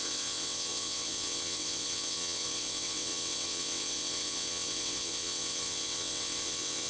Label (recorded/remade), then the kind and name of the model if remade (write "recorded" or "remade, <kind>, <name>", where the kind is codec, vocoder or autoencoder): remade, vocoder, WaveNeXt